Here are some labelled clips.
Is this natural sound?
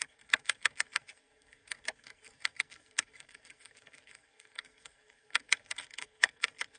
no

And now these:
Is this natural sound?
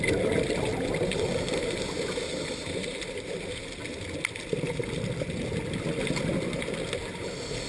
yes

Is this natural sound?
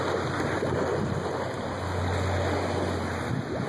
yes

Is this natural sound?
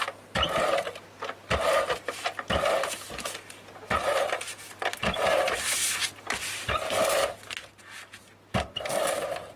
yes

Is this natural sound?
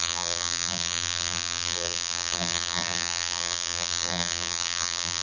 no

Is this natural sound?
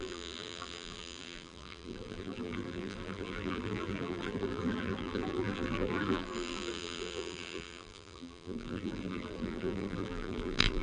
no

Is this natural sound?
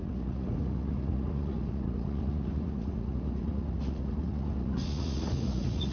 no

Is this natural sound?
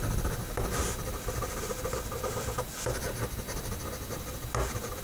yes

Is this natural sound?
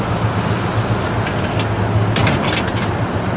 yes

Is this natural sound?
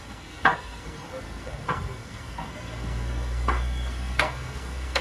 no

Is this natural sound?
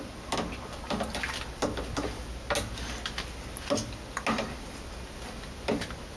yes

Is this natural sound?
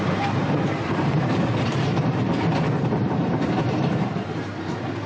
no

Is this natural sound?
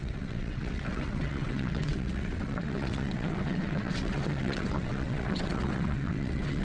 no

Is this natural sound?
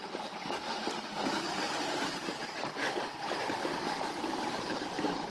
yes